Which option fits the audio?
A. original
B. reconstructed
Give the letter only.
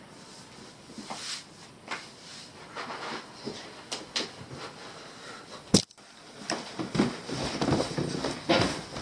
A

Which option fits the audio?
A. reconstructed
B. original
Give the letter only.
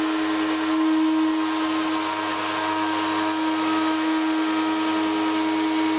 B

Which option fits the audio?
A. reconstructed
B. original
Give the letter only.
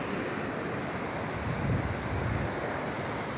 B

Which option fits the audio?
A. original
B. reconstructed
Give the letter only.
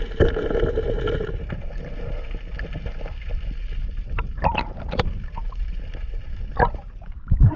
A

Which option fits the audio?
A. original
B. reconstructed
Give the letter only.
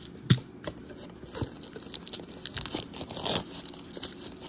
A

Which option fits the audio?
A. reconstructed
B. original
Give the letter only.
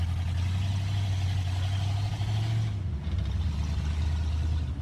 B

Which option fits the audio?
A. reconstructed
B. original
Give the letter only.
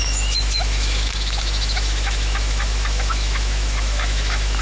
A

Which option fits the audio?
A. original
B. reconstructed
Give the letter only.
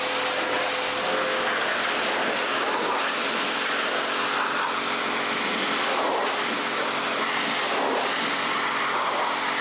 A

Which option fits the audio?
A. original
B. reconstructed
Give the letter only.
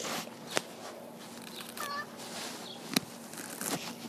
A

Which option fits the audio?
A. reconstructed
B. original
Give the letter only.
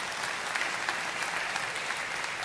B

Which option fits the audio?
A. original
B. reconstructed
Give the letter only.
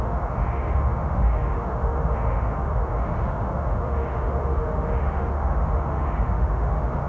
B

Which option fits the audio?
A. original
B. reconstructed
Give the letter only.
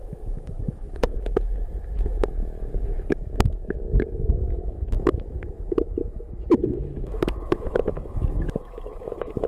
B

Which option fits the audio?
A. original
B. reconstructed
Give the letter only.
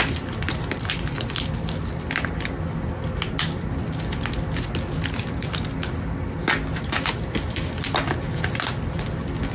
A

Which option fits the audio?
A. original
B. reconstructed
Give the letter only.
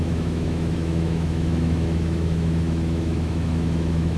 B